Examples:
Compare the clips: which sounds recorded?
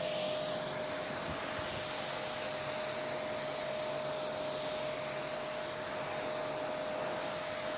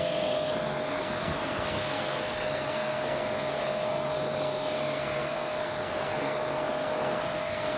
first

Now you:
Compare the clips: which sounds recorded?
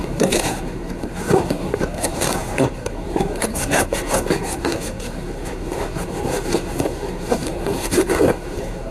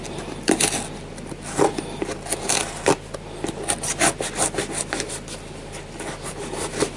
second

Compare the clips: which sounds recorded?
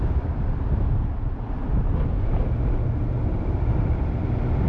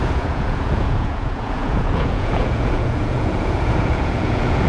first